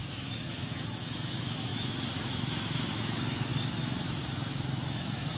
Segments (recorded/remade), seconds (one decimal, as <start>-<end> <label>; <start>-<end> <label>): 0.0-5.4 remade